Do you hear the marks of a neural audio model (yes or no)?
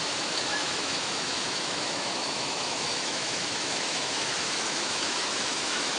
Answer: yes